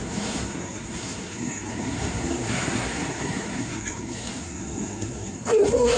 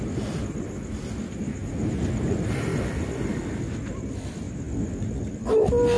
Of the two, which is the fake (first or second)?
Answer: first